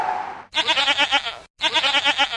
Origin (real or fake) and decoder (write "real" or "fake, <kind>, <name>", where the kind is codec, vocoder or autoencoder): real